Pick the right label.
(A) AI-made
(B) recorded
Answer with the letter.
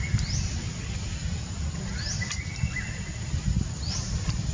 B